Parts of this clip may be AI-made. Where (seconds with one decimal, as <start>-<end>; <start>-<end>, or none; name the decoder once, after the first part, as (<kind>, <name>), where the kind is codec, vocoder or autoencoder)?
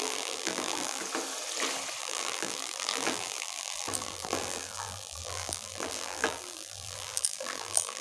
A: 0.0-1.0 (vocoder, BigVGAN v2); 2.0-8.0